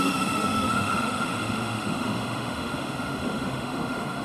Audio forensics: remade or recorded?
remade